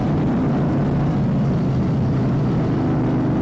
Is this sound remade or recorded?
recorded